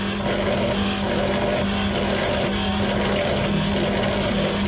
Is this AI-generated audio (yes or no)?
no